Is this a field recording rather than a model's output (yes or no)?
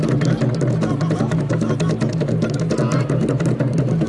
yes